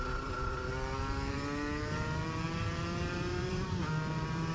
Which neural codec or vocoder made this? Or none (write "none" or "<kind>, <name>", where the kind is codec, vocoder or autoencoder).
vocoder, BigVGAN v2